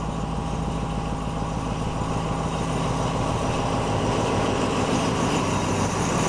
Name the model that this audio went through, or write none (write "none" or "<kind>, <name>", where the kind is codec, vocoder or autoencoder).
none